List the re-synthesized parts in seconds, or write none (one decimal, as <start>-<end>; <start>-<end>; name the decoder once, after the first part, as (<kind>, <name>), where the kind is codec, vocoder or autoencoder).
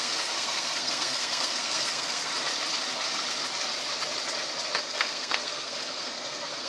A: 0.0-2.3 (codec, SNAC); 4.8-6.7